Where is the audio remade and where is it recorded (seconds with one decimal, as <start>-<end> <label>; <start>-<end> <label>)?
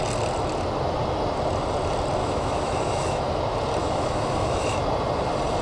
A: 0.0-2.2 recorded; 2.2-3.4 remade; 3.4-3.8 recorded; 3.8-4.8 remade; 4.8-5.6 recorded